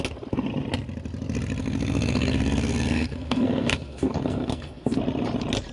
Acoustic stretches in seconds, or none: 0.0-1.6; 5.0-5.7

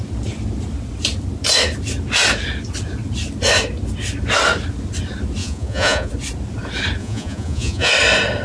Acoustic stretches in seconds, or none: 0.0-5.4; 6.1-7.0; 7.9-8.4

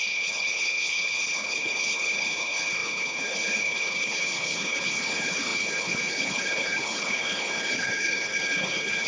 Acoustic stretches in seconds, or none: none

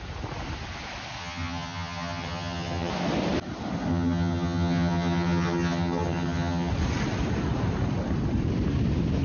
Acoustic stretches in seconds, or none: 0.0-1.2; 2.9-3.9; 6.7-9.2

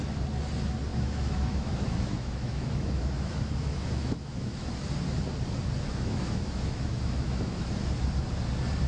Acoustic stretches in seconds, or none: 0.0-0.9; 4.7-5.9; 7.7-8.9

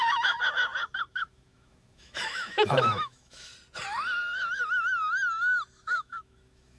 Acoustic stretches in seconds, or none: 0.4-1.1; 3.5-5.7